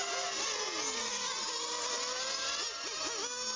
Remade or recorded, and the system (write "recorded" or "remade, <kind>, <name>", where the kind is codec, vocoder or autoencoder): recorded